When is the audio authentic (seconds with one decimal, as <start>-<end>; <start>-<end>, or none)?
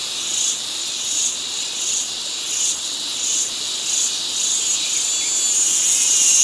0.0-0.8; 3.5-5.7